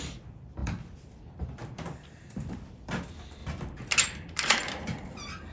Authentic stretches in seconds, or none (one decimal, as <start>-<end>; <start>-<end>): 3.4-4.0